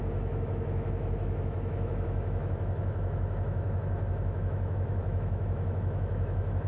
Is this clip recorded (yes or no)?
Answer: no